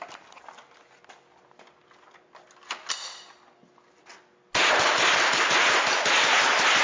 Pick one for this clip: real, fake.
real